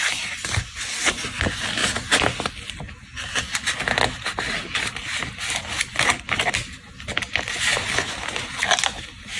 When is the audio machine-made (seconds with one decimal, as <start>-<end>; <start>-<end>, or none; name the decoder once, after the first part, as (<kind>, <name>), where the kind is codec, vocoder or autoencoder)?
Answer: none